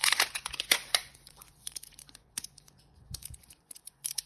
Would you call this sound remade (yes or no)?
yes